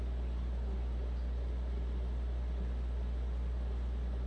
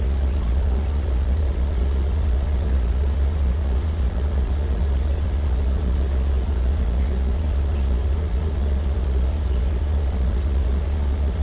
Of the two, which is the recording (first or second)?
first